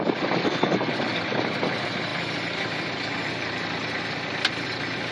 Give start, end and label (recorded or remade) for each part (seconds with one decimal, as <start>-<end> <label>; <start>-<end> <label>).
0.0-0.4 recorded; 0.4-0.9 remade; 0.9-5.1 recorded